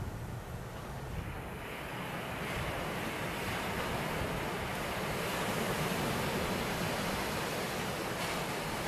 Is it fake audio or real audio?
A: real